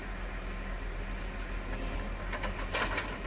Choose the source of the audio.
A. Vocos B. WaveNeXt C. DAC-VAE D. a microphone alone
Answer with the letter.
D